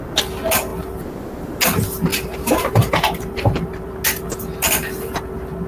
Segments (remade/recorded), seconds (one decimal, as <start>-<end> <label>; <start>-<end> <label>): 0.0-2.1 recorded; 2.1-3.9 remade; 3.9-5.7 recorded